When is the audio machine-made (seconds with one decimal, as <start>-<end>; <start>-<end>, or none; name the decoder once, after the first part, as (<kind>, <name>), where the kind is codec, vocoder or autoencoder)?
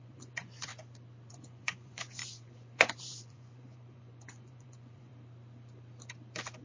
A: 0.0-0.7 (vocoder, Vocos); 1.3-5.1